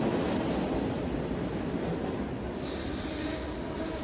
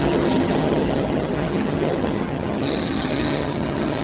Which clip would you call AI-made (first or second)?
second